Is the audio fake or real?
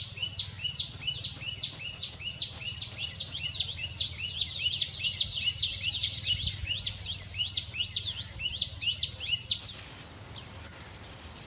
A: fake